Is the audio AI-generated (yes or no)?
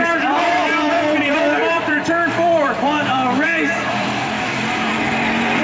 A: yes